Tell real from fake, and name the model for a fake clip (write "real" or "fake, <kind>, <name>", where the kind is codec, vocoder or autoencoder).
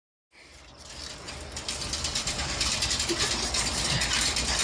real